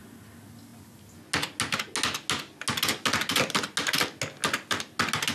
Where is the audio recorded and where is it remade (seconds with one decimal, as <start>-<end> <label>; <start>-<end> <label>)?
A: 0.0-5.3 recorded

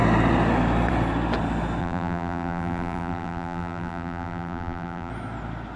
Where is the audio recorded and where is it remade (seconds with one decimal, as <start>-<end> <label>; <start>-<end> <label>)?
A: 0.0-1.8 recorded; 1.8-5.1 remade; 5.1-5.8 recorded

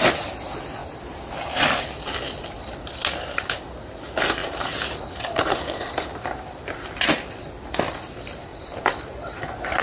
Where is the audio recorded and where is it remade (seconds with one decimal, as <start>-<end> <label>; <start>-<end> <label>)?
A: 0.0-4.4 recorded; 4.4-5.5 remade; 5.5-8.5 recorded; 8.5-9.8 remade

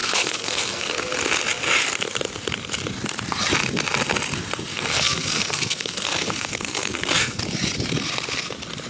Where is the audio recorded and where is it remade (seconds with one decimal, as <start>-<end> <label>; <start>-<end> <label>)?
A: 0.0-1.0 remade; 1.0-4.7 recorded; 4.7-7.4 remade; 7.4-8.9 recorded

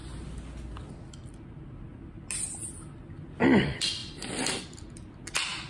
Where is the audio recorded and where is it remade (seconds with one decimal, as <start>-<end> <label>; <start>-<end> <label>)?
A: 0.0-4.0 recorded; 4.0-5.3 remade; 5.3-5.7 recorded

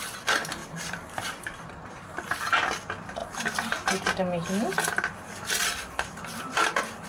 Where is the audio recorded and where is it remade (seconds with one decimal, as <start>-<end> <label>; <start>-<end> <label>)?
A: 0.0-0.6 recorded; 0.6-1.7 remade; 1.7-7.1 recorded

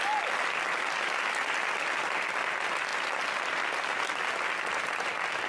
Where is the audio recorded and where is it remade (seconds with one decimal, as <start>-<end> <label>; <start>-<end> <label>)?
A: 0.0-5.5 recorded

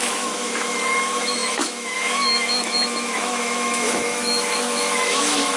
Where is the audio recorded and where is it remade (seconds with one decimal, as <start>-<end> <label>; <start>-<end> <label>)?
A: 0.0-5.6 remade